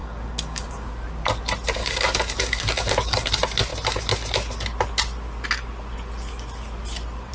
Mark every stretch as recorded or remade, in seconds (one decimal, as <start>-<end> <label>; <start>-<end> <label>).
0.0-0.9 remade; 0.9-1.8 recorded; 1.8-3.3 remade; 3.3-7.3 recorded